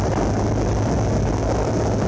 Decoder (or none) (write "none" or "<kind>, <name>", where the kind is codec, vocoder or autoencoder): none